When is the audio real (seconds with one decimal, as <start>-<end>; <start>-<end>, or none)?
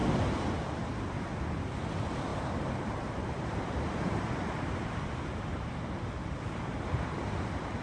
0.0-2.3; 5.7-7.8